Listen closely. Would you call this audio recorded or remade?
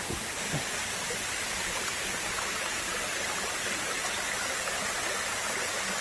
recorded